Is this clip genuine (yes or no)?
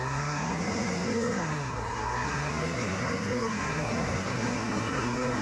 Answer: no